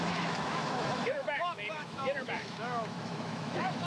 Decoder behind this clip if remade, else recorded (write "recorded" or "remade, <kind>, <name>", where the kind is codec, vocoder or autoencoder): remade, autoencoder, DAC-VAE